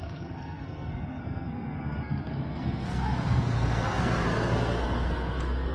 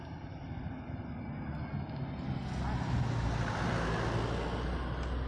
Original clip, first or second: second